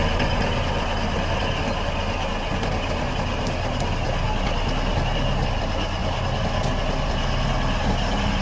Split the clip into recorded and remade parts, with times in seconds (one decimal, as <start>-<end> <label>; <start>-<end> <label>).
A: 0.0-8.4 recorded